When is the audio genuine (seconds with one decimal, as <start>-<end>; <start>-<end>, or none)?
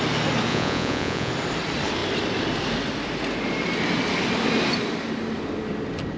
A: 0.0-0.5; 1.3-6.2